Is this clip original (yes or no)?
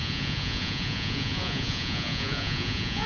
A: no